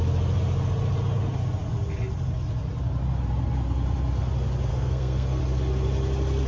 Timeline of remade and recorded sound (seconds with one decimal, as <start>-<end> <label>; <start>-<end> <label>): 0.0-4.7 recorded; 4.7-5.4 remade; 5.4-6.5 recorded